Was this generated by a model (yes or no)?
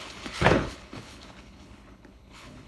yes